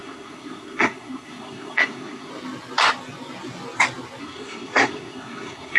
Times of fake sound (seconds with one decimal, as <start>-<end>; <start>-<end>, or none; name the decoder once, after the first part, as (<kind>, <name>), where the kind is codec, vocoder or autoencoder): 0.0-2.3 (codec, SNAC); 4.2-5.8